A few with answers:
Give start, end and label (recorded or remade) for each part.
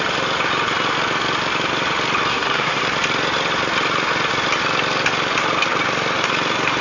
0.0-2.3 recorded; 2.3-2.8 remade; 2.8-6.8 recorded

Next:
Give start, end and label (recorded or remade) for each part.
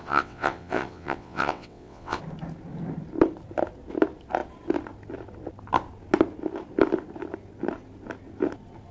0.0-2.2 remade; 2.2-8.9 recorded